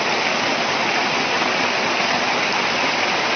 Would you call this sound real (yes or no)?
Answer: yes